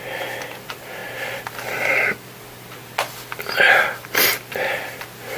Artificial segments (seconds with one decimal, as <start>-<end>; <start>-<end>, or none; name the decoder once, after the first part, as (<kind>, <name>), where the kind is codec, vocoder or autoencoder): none